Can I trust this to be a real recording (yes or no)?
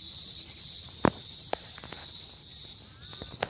yes